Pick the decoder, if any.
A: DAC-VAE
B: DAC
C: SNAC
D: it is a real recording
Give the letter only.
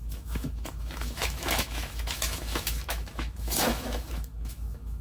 A